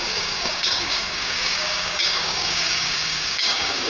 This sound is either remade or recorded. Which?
remade